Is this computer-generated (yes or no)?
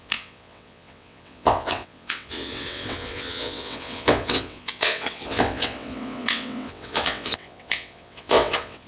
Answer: yes